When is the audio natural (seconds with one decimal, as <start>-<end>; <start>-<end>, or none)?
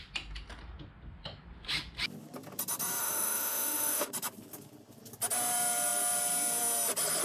0.0-3.0; 4.1-7.2